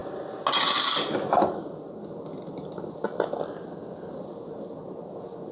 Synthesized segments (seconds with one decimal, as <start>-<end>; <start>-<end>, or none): none